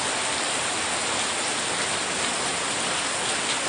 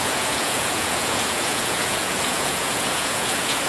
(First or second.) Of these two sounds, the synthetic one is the second